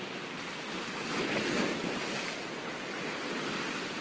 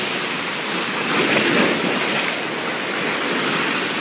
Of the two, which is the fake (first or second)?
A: first